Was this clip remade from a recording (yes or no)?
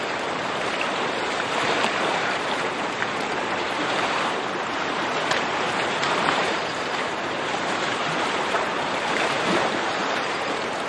yes